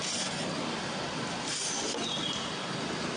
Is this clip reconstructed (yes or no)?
no